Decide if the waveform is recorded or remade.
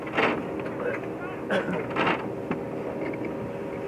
recorded